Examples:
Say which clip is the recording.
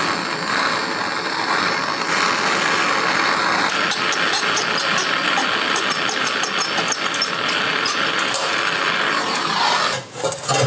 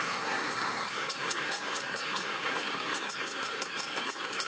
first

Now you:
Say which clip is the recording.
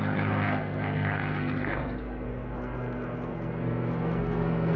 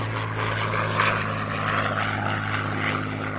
second